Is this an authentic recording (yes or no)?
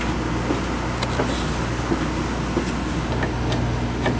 yes